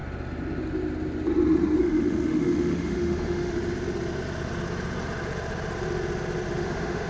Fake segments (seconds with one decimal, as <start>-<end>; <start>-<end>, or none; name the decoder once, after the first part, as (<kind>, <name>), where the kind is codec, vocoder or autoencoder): 1.8-3.5 (autoencoder, DAC-VAE); 6.6-7.1